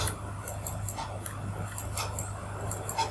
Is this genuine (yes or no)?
yes